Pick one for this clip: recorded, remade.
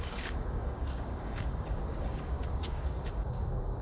remade